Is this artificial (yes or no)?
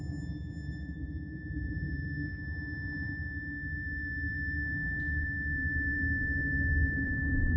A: yes